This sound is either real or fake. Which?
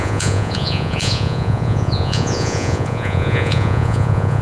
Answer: fake